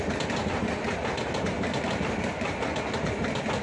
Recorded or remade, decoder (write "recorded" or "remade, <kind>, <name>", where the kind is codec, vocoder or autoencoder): recorded